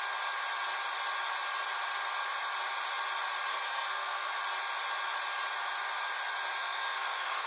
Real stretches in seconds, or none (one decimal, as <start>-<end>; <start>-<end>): 0.0-3.5; 4.3-6.6